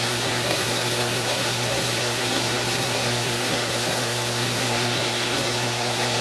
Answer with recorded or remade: remade